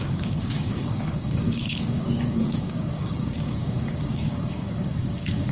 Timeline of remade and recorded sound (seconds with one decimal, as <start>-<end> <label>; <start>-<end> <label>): 0.0-5.5 remade